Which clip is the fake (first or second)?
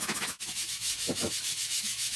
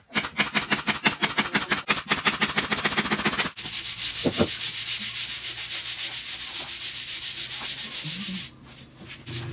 first